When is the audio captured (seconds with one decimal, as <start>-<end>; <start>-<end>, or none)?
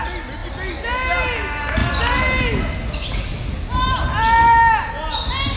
0.0-5.6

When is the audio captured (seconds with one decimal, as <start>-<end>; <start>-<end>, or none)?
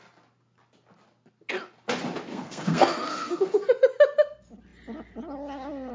0.0-2.3; 3.7-5.9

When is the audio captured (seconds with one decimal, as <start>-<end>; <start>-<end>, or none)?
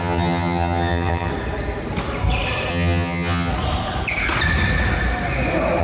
1.3-2.7; 3.5-5.8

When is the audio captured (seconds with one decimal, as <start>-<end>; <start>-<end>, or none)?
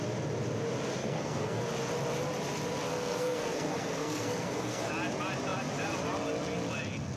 0.0-1.0; 1.6-2.9; 4.9-7.2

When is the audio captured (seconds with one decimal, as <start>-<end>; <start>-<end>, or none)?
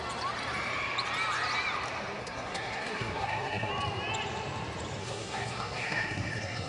0.0-2.2; 3.7-5.0